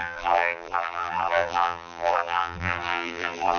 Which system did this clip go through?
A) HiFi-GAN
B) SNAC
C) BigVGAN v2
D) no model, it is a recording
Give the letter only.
C